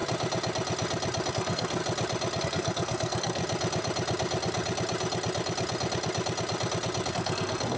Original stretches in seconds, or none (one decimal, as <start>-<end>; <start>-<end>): 0.0-1.3; 1.8-2.4; 3.4-7.1